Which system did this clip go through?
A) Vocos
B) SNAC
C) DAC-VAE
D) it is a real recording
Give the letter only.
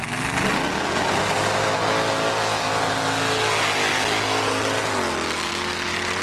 D